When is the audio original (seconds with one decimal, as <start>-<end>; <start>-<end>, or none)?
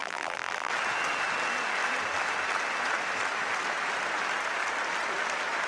0.7-5.7